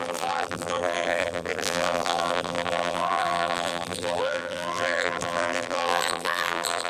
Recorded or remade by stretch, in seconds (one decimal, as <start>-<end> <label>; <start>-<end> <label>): 0.0-6.9 remade

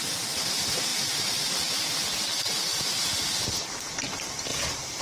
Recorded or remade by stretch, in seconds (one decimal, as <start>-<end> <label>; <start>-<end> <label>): 0.0-4.5 recorded; 4.5-5.0 remade